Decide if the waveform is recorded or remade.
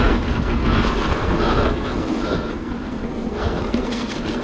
remade